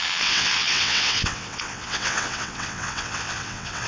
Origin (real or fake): fake